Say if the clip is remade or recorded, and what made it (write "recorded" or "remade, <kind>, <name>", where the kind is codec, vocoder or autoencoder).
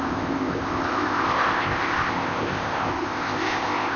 remade, codec, ZipCodec